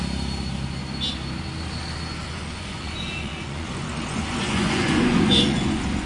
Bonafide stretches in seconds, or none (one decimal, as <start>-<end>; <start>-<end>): 0.0-2.2